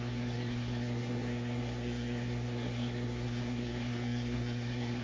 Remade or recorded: remade